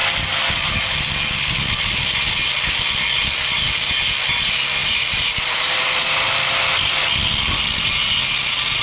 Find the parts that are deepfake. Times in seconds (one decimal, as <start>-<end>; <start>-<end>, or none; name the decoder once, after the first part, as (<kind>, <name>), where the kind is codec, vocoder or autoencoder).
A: 4.8-6.0 (vocoder, BigVGAN v2)